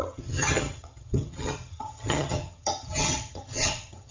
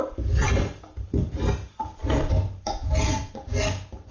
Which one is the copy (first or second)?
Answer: first